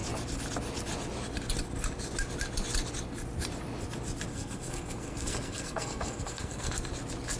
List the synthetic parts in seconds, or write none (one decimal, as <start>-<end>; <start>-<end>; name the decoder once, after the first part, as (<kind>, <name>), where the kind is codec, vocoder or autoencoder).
4.3-6.7 (codec, SNAC)